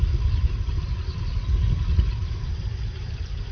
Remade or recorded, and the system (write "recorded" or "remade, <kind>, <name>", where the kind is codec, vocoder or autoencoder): recorded